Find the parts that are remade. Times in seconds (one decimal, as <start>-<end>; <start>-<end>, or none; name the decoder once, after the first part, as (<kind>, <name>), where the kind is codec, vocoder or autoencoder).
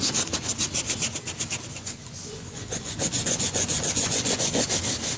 1.7-4.7 (vocoder, Vocos)